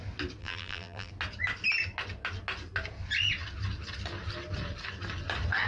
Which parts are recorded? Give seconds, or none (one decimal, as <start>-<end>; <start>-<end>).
0.0-0.4; 1.1-5.7